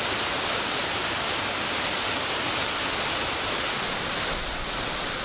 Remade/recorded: recorded